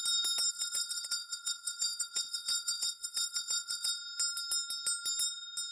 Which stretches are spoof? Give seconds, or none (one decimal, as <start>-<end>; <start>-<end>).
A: 0.5-3.9